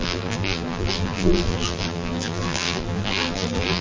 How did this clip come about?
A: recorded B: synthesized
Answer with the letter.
B